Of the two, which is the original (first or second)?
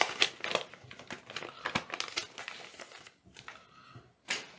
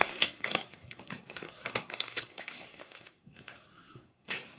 first